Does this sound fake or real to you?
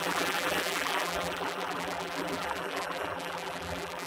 fake